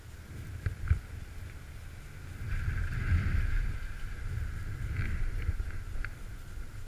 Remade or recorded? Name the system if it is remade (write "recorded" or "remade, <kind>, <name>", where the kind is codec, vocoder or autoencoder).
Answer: recorded